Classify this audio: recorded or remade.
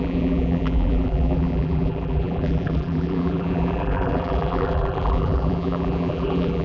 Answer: remade